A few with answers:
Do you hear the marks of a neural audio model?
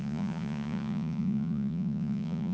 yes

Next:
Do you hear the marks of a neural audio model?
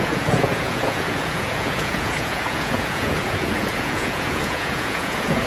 yes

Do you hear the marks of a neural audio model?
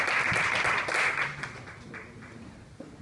no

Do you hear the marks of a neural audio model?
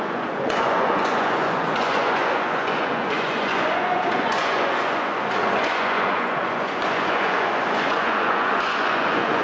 yes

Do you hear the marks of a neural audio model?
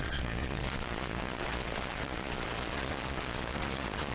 yes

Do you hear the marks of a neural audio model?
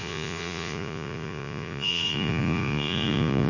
yes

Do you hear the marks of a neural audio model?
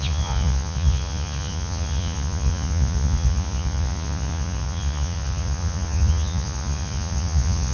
yes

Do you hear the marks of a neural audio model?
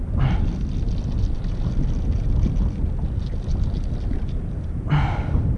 no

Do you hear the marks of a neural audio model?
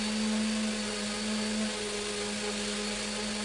no